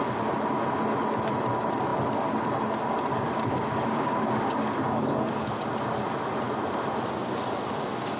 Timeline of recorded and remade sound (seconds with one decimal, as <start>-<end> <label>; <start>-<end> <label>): 0.0-3.1 recorded; 3.1-5.7 remade; 5.7-8.2 recorded